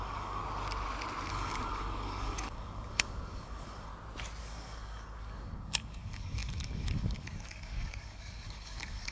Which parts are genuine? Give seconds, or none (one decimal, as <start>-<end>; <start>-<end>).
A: 0.4-1.3; 3.9-4.4